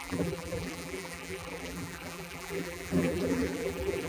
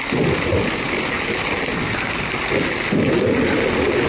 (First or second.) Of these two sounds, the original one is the second